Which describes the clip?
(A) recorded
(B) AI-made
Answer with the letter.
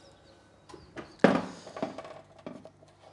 A